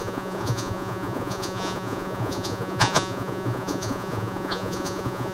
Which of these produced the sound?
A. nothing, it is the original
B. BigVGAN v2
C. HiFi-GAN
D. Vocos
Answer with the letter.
D